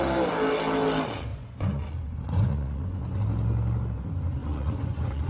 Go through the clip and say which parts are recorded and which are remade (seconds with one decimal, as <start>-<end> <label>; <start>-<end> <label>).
0.0-1.3 recorded; 1.3-3.2 remade; 3.2-4.4 recorded; 4.4-5.3 remade